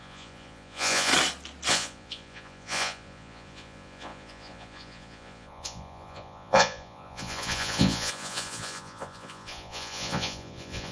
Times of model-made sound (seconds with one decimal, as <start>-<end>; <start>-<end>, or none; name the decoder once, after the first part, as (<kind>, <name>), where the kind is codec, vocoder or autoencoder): 0.0-1.1 (vocoder, Vocos); 1.7-10.9